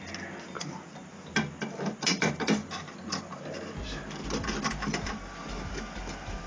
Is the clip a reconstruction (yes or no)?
no